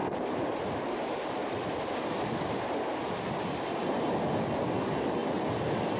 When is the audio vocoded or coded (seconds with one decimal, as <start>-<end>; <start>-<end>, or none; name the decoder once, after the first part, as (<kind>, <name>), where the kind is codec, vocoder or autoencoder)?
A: 0.0-0.9 (vocoder, BigVGAN v2); 1.4-2.1; 5.2-6.0